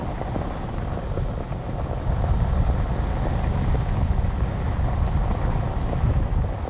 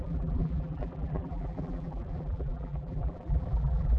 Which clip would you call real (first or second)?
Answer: first